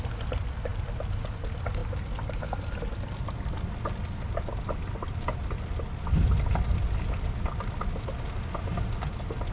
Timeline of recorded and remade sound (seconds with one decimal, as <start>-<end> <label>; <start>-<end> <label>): 0.0-9.5 recorded